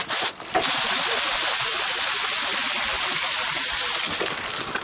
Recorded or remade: recorded